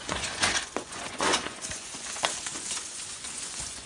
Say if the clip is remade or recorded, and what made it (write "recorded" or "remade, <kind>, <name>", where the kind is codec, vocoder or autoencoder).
remade, vocoder, Vocos